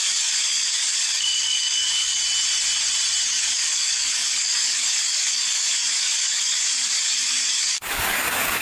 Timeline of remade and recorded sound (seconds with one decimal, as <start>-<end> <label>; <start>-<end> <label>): 0.0-2.2 remade; 2.2-3.3 recorded; 3.3-8.6 remade